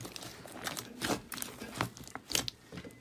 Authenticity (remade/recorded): recorded